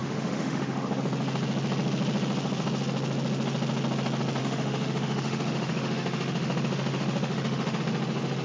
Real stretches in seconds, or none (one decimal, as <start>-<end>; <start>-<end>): 1.0-4.4; 7.8-8.4